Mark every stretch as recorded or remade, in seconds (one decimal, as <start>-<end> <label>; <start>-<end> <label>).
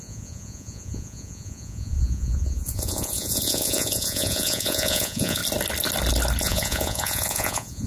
0.0-5.4 remade; 5.4-6.4 recorded; 6.4-7.9 remade